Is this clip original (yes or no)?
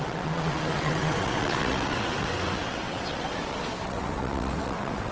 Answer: no